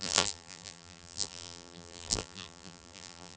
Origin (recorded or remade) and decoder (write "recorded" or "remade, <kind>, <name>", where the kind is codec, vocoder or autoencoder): remade, vocoder, BigVGAN v2